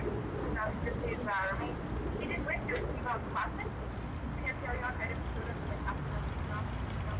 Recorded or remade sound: recorded